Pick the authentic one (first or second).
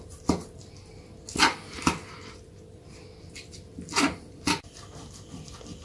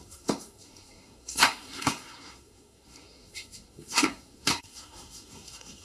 first